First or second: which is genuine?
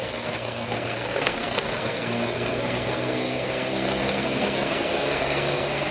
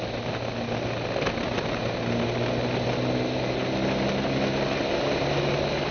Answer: second